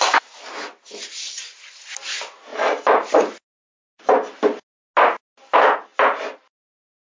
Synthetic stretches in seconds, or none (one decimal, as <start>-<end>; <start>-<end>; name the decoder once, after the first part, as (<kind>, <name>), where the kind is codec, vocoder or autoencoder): 2.5-3.2 (vocoder, BigVGAN v2)